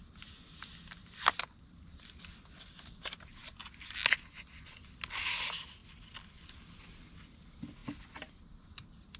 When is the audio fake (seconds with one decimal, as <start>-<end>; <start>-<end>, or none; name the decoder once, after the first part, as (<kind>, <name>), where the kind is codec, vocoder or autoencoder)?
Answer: none